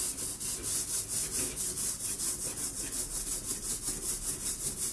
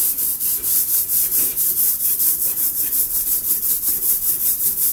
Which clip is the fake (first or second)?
second